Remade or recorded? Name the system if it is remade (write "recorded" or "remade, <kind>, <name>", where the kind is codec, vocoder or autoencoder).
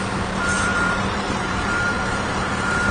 remade, vocoder, BigVGAN v2